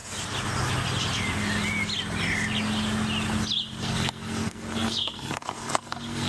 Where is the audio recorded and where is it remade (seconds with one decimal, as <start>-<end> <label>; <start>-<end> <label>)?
0.0-3.8 recorded; 3.8-6.3 remade